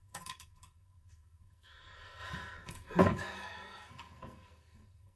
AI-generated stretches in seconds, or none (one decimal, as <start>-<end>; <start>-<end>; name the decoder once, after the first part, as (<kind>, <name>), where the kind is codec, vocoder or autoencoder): 0.0-5.2 (codec, SNAC)